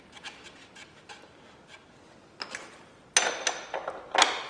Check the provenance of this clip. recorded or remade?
recorded